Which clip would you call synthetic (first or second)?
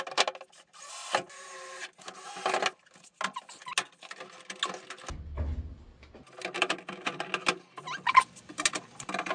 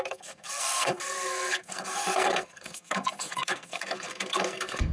second